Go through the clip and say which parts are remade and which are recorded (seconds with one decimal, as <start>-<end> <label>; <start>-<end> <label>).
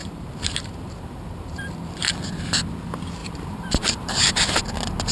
0.0-1.8 remade; 1.8-3.2 recorded; 3.2-4.6 remade; 4.6-5.1 recorded